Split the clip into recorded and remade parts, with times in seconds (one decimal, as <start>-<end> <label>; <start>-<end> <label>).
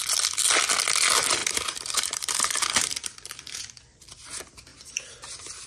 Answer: 0.0-1.4 recorded; 1.4-3.6 remade; 3.6-4.7 recorded; 4.7-5.7 remade